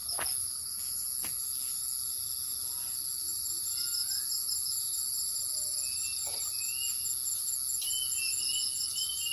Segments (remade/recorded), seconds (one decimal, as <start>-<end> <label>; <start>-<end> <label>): 0.0-9.3 recorded